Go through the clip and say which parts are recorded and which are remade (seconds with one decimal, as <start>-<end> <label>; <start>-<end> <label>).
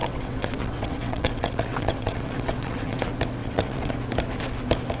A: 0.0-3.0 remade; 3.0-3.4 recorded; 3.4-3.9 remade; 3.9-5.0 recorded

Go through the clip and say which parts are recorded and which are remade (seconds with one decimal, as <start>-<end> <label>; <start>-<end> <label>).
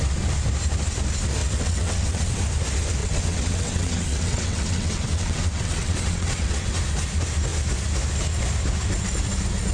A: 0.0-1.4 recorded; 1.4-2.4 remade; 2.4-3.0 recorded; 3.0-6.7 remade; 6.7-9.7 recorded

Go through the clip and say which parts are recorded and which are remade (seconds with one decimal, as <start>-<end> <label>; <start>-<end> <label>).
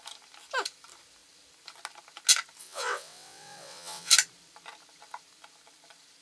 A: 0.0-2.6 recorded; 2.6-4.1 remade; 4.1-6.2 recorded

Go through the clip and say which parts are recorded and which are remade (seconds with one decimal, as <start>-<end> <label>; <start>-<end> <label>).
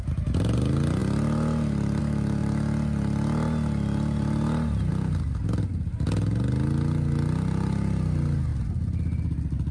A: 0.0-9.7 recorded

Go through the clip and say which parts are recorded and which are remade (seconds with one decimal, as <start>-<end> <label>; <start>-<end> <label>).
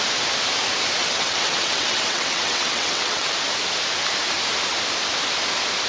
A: 0.0-1.0 recorded; 1.0-3.3 remade; 3.3-5.9 recorded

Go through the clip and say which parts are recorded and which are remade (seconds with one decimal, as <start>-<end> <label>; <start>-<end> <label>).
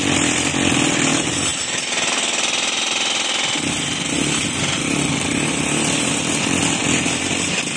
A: 0.0-7.8 recorded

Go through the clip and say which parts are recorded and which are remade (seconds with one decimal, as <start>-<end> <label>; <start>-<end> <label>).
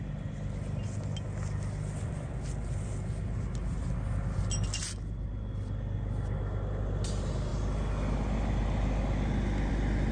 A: 0.0-10.1 recorded